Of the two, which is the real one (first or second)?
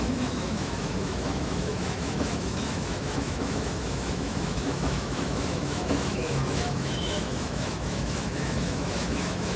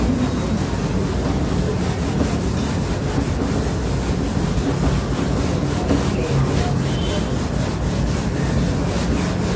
second